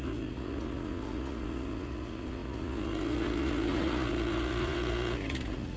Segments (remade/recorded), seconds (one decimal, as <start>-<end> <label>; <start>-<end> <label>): 0.0-5.8 remade